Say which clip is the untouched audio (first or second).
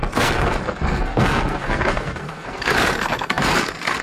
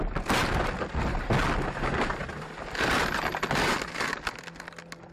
second